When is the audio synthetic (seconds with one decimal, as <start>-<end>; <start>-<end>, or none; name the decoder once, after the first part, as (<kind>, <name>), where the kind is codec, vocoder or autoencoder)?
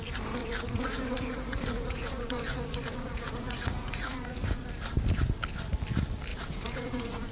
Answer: 0.4-4.7 (vocoder, Vocos); 6.3-7.3